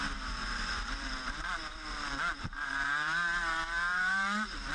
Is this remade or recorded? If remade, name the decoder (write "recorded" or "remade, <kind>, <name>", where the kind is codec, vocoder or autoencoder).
remade, vocoder, BigVGAN v2